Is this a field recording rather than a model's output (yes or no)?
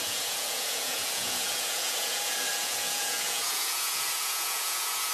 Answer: no